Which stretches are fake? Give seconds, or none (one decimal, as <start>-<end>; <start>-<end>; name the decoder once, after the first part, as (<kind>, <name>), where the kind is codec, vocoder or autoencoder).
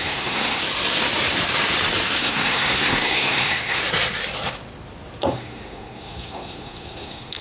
0.0-0.6 (codec, SNAC); 2.2-3.8; 5.2-7.4